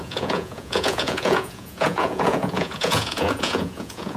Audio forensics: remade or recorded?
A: remade